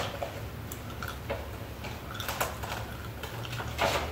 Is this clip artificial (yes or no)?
no